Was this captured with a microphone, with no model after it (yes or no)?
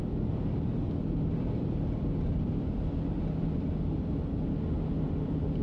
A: yes